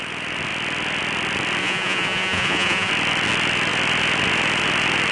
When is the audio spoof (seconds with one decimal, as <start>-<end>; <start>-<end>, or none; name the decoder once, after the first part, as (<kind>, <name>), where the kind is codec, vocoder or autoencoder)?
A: 1.6-2.9 (vocoder, Vocos)